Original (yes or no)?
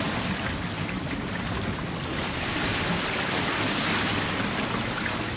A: yes